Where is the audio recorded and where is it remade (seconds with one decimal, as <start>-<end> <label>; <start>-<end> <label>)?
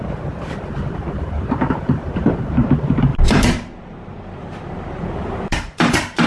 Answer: 0.0-6.3 remade